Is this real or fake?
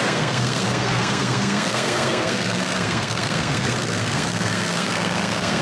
fake